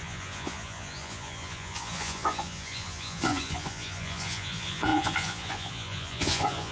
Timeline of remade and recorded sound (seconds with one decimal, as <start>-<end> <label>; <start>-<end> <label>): 0.0-6.7 remade